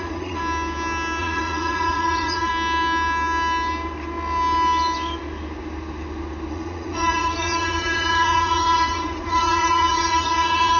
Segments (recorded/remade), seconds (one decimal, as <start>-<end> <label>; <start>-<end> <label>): 0.0-0.4 remade; 0.4-1.2 recorded; 1.2-2.5 remade; 2.5-6.5 recorded; 6.5-10.8 remade